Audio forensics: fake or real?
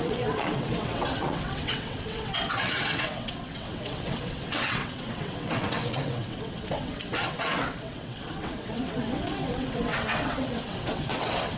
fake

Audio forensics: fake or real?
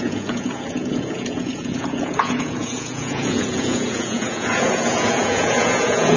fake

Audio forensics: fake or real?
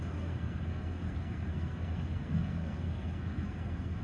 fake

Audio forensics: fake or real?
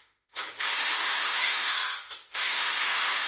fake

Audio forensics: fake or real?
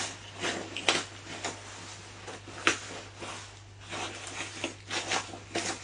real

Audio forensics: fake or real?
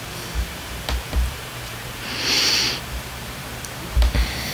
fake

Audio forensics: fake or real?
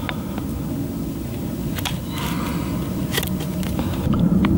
real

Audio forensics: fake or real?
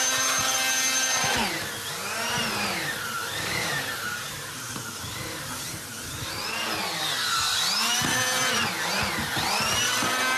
real